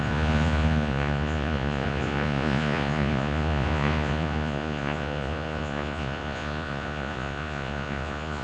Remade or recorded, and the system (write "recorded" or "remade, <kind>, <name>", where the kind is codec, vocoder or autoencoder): remade, vocoder, Vocos